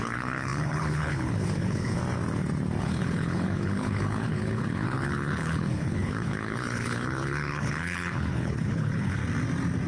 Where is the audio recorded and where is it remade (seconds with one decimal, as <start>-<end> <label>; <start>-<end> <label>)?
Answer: 0.0-2.0 remade; 2.0-2.8 recorded; 2.8-9.2 remade; 9.2-9.9 recorded